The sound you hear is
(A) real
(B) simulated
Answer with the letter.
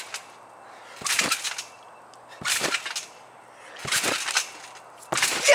A